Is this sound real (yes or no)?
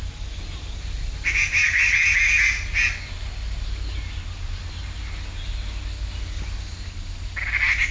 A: yes